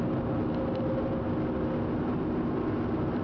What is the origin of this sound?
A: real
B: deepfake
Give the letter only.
A